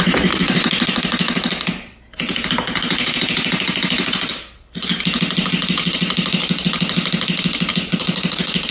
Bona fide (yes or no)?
yes